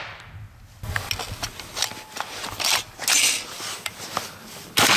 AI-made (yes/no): no